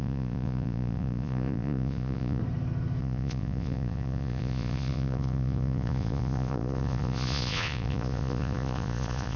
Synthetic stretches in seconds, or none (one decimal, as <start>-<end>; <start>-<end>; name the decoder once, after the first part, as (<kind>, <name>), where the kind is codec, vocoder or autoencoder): 0.0-2.4 (vocoder, Vocos); 3.0-9.4